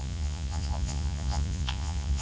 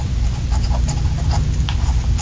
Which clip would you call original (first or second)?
second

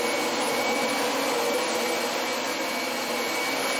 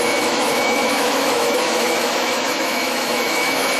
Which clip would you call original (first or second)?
first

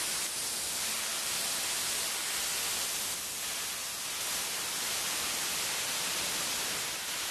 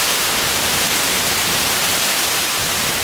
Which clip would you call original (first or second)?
first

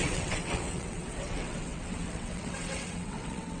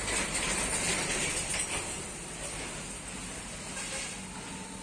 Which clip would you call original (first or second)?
second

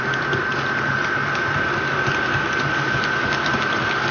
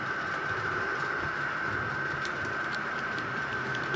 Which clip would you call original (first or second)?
first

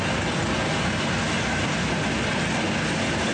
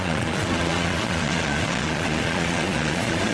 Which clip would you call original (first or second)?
first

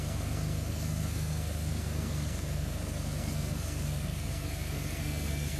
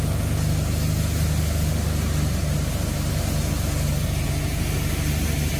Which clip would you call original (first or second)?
second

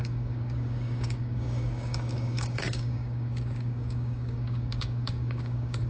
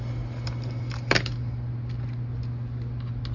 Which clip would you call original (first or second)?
second